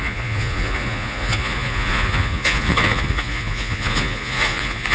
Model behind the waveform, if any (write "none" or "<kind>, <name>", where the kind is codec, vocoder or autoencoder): vocoder, Vocos